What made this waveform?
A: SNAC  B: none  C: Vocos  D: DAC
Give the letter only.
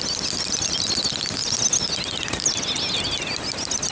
B